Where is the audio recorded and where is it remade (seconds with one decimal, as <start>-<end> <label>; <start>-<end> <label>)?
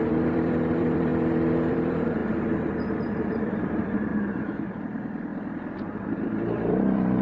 0.0-1.1 remade; 1.1-1.7 recorded; 1.7-2.2 remade; 2.2-3.3 recorded; 3.3-4.1 remade; 4.1-4.8 recorded; 4.8-5.3 remade; 5.3-5.8 recorded; 5.8-7.2 remade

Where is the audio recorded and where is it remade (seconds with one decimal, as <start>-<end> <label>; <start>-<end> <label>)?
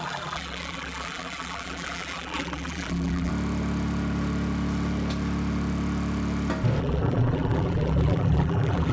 0.0-3.3 remade; 3.3-6.8 recorded; 6.8-8.9 remade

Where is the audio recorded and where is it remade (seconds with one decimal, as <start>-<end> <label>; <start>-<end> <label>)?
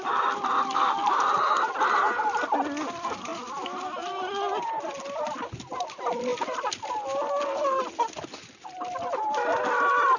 0.0-10.2 recorded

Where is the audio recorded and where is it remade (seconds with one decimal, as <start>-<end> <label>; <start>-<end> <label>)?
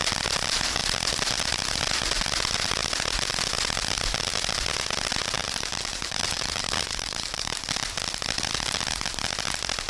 0.0-5.4 recorded; 5.4-7.7 remade; 7.7-9.9 recorded